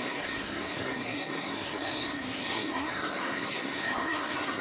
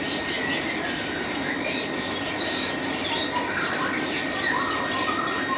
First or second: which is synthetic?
first